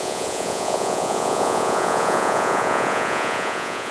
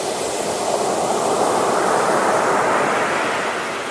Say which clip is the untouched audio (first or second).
second